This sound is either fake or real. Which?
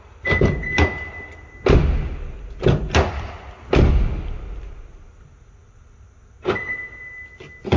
real